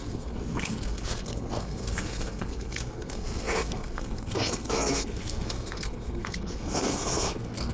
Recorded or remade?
remade